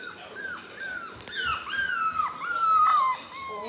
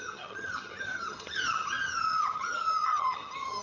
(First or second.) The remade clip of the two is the second